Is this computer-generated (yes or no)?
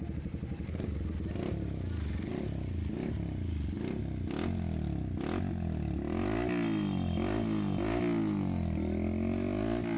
no